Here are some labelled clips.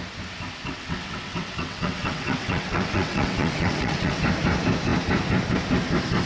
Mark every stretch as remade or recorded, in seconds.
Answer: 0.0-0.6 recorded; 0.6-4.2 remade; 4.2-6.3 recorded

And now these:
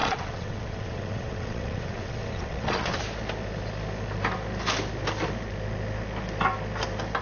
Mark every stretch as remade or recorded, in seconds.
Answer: 0.0-3.0 remade; 3.0-7.2 recorded